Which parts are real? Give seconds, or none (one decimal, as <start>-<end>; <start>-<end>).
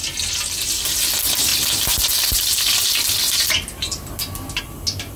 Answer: 0.0-1.5; 4.6-5.2